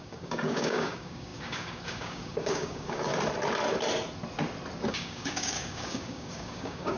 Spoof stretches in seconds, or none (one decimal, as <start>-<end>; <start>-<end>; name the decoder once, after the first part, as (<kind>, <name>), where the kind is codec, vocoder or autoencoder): 0.0-3.1 (codec, DAC); 4.9-7.0